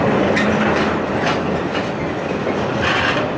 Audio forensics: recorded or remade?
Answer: recorded